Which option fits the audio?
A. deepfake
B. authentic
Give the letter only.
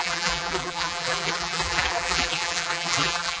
A